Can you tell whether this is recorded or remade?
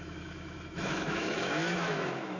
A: remade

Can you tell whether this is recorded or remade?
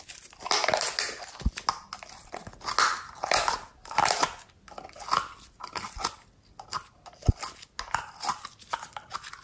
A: recorded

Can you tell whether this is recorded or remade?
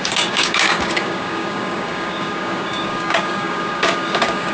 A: remade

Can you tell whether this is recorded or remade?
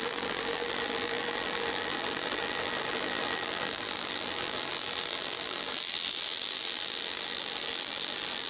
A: remade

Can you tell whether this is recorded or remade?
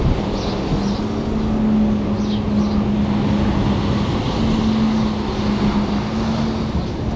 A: recorded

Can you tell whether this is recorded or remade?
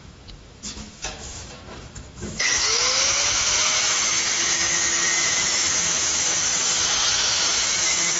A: remade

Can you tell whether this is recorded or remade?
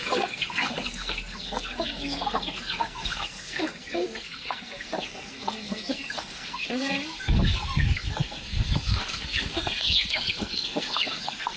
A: remade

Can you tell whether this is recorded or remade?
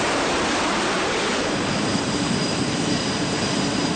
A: remade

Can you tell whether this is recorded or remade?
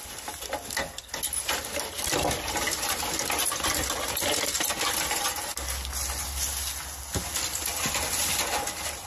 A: recorded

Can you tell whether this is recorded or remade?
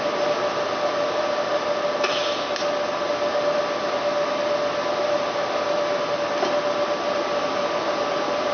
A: recorded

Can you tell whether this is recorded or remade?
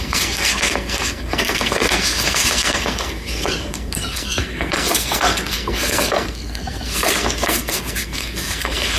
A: remade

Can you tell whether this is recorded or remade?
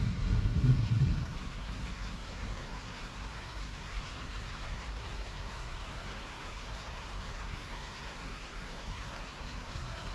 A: remade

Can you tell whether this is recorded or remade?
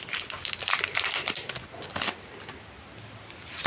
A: recorded